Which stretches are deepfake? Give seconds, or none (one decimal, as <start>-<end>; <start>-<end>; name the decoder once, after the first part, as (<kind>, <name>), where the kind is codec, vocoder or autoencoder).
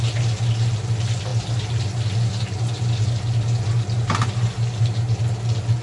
none